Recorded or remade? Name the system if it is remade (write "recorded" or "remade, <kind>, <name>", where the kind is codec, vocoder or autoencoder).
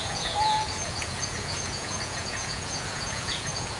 remade, vocoder, Vocos